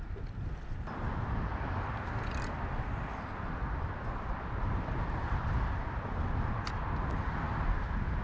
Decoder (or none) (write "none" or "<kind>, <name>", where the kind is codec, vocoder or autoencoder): none